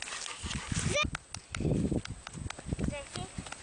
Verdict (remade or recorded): recorded